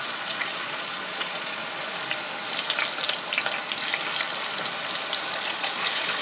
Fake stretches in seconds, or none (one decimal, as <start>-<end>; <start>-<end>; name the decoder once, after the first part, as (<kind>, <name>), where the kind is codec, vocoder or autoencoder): 0.0-1.6 (vocoder, Vocos); 5.3-6.2